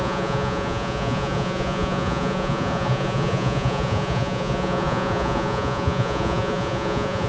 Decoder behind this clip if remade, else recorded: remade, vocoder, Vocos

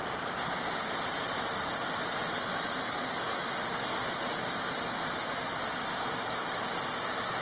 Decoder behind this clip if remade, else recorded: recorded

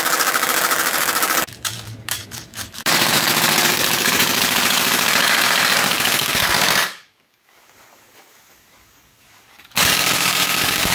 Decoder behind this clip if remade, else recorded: remade, codec, DAC